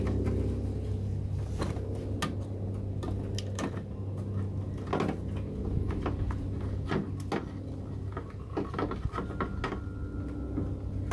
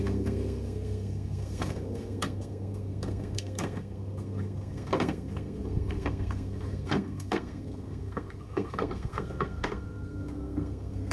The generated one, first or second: second